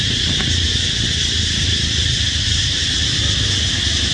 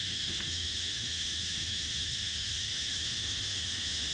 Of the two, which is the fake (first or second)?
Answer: second